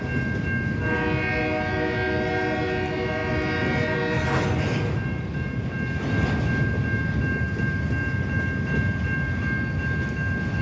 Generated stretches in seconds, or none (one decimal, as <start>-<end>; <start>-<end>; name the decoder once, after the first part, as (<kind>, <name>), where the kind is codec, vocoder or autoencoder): none